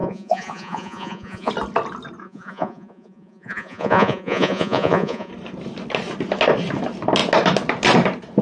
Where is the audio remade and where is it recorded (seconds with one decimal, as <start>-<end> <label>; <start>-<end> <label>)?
0.0-1.5 remade; 1.5-2.2 recorded; 2.2-5.3 remade; 5.3-8.4 recorded